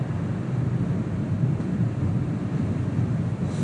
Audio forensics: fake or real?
fake